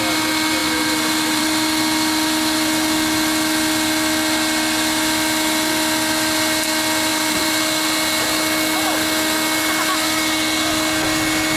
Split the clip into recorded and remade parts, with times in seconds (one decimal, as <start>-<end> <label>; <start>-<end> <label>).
0.0-0.6 recorded; 0.6-1.4 remade; 1.4-7.1 recorded; 7.1-7.6 remade; 7.6-11.6 recorded